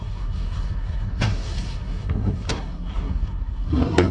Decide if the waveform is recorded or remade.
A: remade